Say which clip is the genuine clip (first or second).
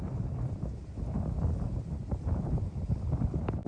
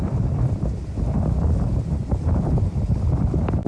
first